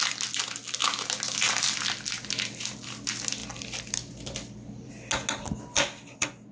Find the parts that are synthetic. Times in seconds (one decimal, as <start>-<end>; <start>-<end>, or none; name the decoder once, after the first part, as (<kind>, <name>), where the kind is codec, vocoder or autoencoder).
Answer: 3.4-4.9 (vocoder, BigVGAN v2)